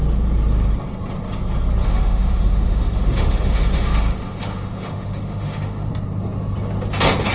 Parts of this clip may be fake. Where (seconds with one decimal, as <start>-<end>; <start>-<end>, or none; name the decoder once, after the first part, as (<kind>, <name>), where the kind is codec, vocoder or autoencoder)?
1.8-5.9 (autoencoder, DAC-VAE)